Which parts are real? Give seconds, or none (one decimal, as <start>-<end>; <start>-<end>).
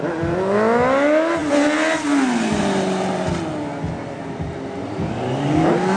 0.0-4.8; 5.5-6.0